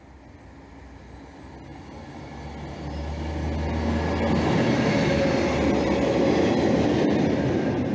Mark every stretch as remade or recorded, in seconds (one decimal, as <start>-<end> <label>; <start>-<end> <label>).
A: 0.0-7.9 recorded